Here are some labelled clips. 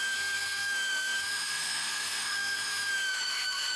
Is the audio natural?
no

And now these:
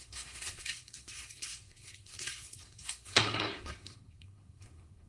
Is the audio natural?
no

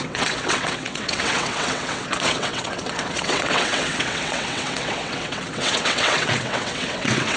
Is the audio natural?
no